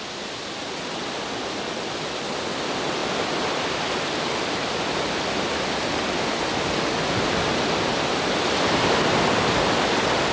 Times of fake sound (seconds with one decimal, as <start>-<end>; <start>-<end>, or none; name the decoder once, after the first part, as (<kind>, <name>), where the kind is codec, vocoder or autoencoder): none